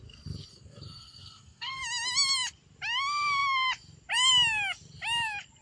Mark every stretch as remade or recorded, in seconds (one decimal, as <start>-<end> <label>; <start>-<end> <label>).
0.0-0.5 recorded; 0.5-1.8 remade; 1.8-5.6 recorded